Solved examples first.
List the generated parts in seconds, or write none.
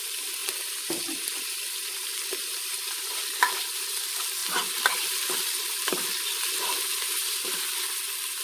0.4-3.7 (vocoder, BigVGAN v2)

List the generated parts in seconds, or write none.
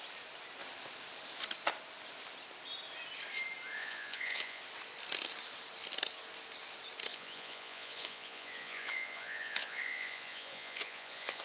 3.8-4.6 (vocoder, Vocos); 7.1-11.4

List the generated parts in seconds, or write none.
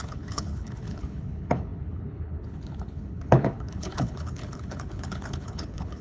0.0-6.0 (codec, HILCodec)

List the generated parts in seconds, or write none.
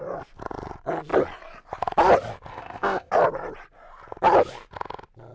2.5-3.1 (codec, ZipCodec)